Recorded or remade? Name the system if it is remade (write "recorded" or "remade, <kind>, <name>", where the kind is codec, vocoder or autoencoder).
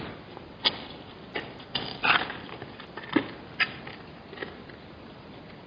recorded